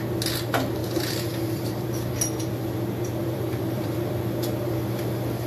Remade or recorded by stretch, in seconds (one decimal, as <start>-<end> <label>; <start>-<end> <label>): 0.0-0.8 recorded; 0.8-2.1 remade; 2.1-3.2 recorded; 3.2-4.1 remade; 4.1-5.5 recorded